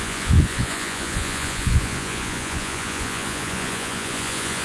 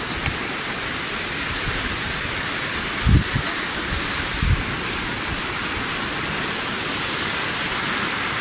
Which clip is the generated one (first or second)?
first